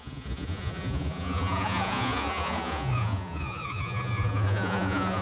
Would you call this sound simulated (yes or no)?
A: yes